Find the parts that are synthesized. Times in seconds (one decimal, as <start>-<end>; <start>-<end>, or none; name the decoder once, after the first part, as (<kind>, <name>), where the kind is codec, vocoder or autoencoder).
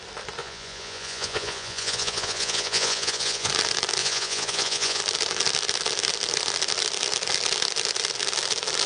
0.4-3.5 (vocoder, Vocos); 4.0-5.0